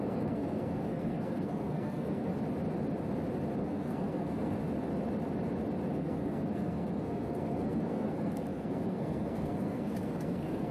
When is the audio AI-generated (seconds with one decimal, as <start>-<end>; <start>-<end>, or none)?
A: 0.0-2.3; 3.6-4.6; 5.9-10.7